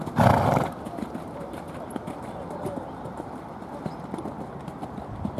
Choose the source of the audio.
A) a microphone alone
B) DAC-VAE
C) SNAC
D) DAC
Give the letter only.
A